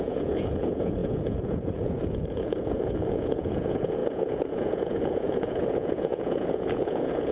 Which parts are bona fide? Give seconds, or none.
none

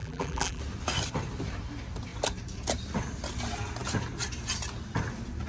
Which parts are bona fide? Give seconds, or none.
0.6-5.5

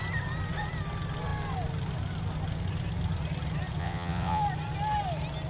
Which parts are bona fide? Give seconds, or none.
0.0-3.8; 4.4-5.5

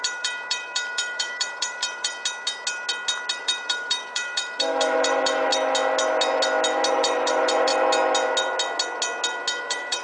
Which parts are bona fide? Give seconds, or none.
2.1-3.4; 5.5-6.9; 7.7-9.6

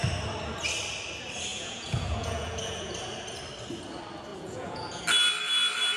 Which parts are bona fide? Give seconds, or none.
0.0-1.5; 2.9-4.3; 5.0-6.0

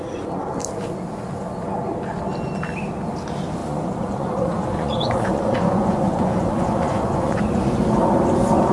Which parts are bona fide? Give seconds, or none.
0.0-3.6; 7.4-8.7

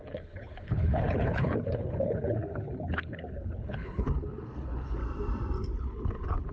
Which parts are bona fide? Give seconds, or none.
5.0-5.8